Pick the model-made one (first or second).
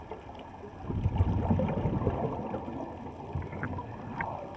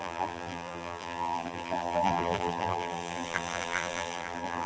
second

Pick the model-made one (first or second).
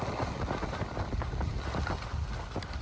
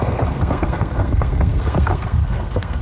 second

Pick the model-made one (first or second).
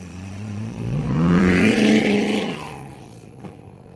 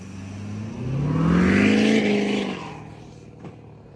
first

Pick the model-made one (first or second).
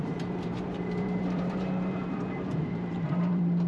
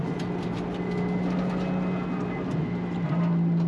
first